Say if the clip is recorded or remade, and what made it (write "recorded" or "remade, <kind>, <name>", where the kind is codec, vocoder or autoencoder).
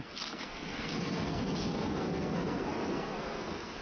remade, codec, SNAC